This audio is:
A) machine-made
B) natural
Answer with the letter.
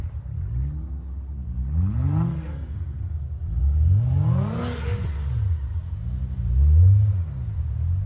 B